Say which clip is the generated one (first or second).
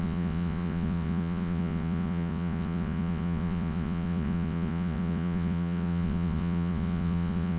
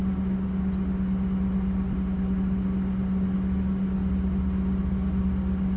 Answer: first